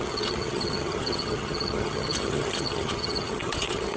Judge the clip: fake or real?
fake